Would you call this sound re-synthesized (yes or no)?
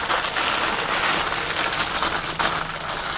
no